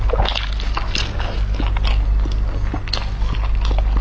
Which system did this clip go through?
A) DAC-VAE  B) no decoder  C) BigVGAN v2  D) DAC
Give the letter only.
B